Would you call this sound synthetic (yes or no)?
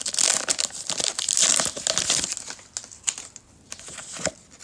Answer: no